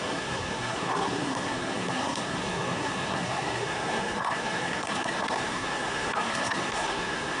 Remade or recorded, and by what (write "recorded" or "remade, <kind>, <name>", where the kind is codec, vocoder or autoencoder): remade, codec, SNAC